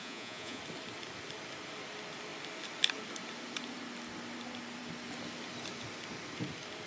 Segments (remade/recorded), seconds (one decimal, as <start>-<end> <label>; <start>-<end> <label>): 0.0-0.6 remade; 0.6-6.9 recorded